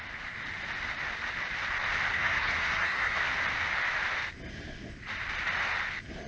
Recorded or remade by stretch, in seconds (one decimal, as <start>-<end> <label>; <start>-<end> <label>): 0.0-2.1 recorded; 2.1-3.2 remade; 3.2-6.3 recorded